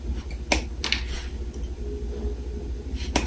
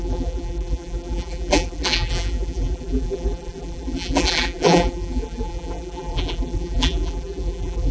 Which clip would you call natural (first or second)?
first